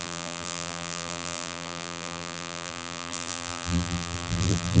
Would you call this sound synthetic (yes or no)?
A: yes